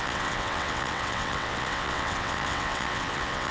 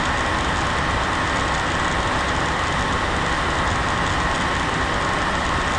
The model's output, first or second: first